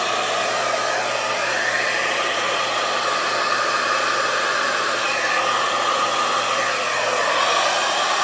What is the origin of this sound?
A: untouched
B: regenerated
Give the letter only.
A